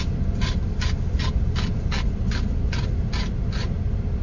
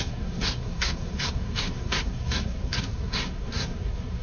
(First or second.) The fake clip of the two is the second